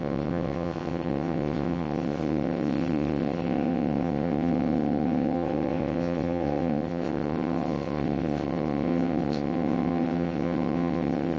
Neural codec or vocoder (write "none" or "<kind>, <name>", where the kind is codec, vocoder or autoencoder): vocoder, WaveNeXt